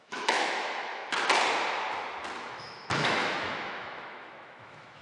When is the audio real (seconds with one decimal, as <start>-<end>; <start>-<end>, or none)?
1.0-2.4